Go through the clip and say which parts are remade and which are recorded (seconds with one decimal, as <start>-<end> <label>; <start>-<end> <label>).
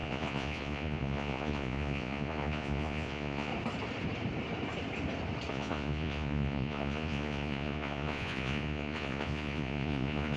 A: 0.0-3.5 remade; 3.5-5.5 recorded; 5.5-10.4 remade